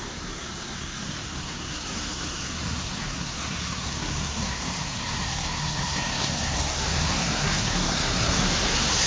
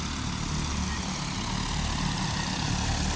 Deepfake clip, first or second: first